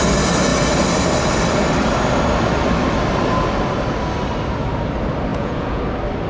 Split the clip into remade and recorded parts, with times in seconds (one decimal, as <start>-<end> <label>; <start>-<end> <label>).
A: 0.0-5.3 recorded; 5.3-5.8 remade; 5.8-6.3 recorded